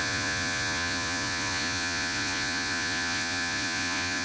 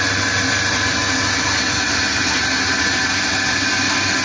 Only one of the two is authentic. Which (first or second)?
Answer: second